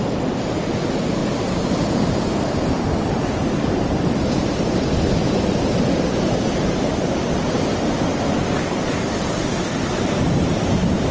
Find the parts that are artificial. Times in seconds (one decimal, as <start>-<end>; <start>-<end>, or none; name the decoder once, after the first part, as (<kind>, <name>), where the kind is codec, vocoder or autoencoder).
none

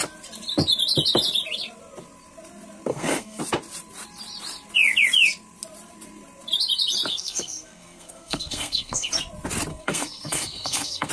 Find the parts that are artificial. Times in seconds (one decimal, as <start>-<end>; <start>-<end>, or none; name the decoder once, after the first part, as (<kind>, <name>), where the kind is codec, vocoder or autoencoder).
2.9-3.4 (codec, SNAC); 7.1-9.1; 9.7-11.1

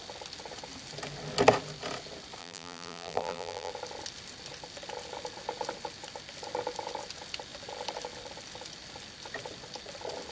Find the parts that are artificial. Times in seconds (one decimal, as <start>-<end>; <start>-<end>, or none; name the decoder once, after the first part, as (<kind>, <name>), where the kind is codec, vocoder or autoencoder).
2.4-3.7 (vocoder, BigVGAN v2)

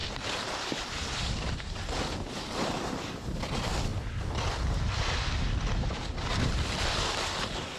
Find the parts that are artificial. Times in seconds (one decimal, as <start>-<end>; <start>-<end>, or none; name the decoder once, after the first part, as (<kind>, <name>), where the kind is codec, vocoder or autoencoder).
0.0-3.9 (vocoder, BigVGAN v2); 6.3-7.8